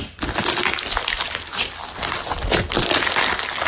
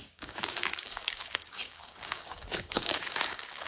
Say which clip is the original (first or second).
first